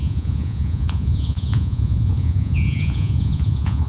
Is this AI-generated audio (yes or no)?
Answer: yes